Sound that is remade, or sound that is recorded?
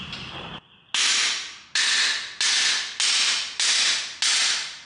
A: recorded